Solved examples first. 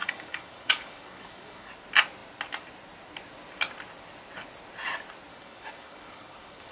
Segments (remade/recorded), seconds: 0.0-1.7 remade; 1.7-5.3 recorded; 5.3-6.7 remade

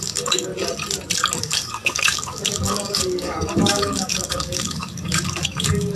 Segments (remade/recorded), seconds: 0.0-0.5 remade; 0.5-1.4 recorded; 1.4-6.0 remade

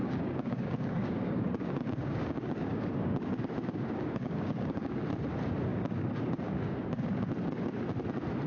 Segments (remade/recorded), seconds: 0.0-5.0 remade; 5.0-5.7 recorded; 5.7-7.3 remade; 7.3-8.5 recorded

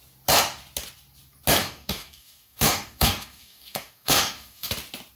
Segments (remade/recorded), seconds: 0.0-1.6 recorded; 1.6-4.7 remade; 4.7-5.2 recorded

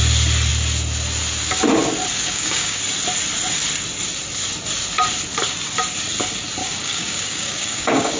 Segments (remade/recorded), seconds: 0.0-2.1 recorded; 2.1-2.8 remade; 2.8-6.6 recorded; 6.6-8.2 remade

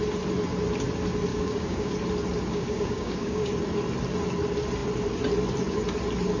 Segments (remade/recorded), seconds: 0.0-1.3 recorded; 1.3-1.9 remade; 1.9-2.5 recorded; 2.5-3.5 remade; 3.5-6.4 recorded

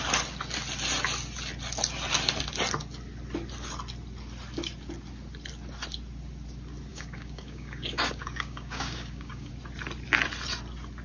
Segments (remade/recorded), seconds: 0.0-6.9 recorded; 6.9-9.5 remade; 9.5-11.0 recorded

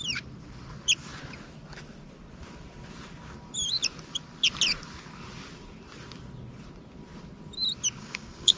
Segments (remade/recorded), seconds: 0.0-8.0 recorded; 8.0-8.6 remade